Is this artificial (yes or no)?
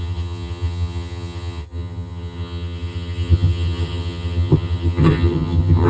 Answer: yes